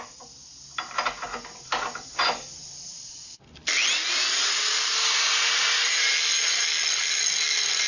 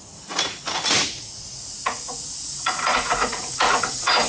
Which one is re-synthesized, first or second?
second